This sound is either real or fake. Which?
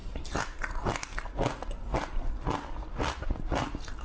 real